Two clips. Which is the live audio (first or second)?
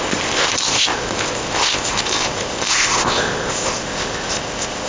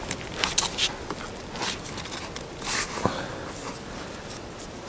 second